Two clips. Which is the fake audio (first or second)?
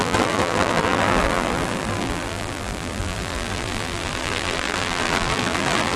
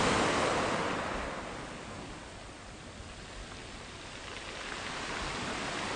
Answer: first